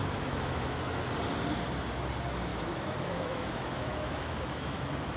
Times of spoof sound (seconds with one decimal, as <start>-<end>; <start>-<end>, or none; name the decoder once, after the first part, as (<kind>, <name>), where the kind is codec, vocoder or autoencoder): 0.0-1.1 (autoencoder, DAC-VAE); 2.5-4.8